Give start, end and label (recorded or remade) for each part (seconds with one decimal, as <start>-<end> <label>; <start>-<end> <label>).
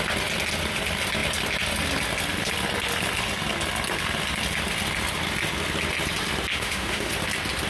0.0-6.5 recorded; 6.5-7.1 remade; 7.1-7.7 recorded